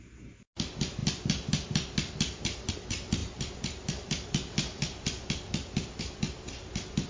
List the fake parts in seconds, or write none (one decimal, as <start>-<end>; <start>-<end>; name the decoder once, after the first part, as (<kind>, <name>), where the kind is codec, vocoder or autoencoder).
none